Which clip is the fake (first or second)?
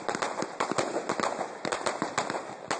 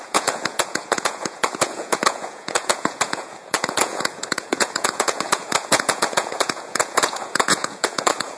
second